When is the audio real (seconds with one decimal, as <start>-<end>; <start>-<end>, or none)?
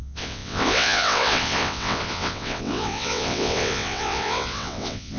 none